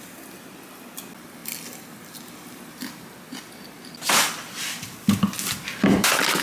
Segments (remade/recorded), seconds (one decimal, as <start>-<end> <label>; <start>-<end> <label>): 0.0-6.4 recorded